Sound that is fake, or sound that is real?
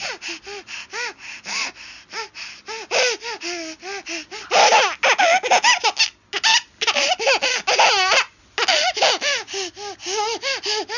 real